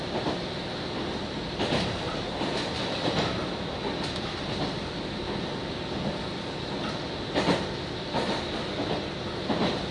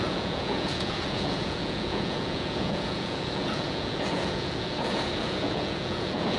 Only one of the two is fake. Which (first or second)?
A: second